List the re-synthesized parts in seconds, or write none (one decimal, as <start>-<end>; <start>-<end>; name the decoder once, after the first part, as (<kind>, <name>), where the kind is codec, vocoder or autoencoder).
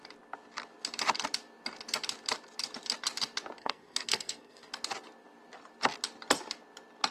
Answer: 3.6-4.7 (codec, SNAC)